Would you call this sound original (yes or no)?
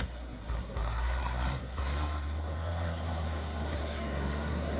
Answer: no